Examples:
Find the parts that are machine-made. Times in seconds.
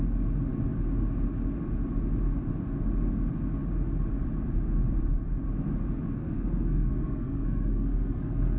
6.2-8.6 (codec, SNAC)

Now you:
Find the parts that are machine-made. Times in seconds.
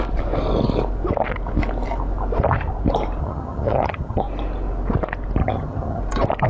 3.2-4.2 (vocoder, HiFi-GAN); 5.4-6.0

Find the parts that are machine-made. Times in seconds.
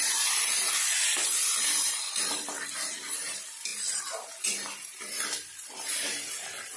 0.0-3.7 (vocoder, BigVGAN v2); 4.4-6.8